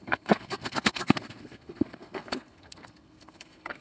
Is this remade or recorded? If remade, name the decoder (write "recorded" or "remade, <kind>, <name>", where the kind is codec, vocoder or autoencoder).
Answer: remade, codec, SNAC